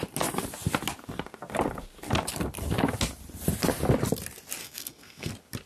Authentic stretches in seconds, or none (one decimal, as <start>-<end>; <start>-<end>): 0.0-4.6; 5.3-5.7